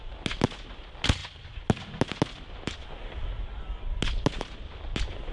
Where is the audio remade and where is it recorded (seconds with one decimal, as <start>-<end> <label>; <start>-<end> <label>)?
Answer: 0.0-5.3 recorded